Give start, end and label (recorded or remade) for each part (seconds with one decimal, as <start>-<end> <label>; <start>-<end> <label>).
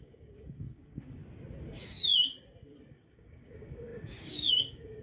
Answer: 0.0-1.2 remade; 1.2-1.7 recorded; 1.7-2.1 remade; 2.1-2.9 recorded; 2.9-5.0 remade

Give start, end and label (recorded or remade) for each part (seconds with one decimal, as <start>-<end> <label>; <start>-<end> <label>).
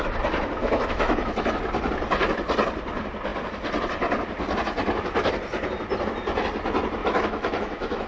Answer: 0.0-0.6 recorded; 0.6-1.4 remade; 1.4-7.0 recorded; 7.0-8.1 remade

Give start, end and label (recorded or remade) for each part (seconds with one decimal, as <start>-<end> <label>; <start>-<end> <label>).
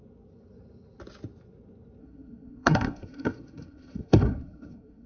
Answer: 0.0-2.0 recorded; 2.0-5.1 remade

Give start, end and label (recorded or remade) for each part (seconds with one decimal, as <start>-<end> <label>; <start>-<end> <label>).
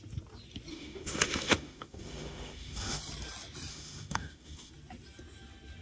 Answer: 0.0-0.7 recorded; 0.7-3.0 remade; 3.0-3.7 recorded; 3.7-4.7 remade; 4.7-5.8 recorded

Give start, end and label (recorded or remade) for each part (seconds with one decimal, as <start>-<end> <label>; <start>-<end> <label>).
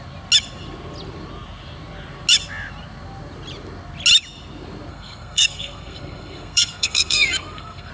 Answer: 0.0-4.9 recorded; 4.9-7.9 remade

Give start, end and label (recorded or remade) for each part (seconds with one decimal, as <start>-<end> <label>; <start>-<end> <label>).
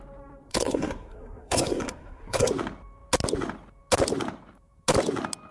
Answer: 0.0-0.5 recorded; 0.5-2.5 remade; 2.5-5.5 recorded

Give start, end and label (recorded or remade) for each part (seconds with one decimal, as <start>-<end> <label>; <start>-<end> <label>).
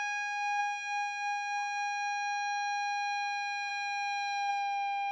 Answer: 0.0-4.5 recorded; 4.5-5.1 remade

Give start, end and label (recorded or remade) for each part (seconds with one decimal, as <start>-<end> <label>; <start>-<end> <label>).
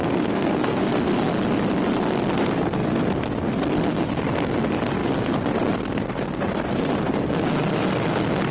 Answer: 0.0-0.8 remade; 0.8-8.5 recorded